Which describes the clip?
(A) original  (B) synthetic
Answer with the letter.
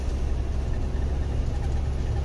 A